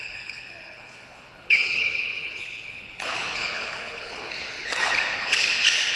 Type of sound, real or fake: fake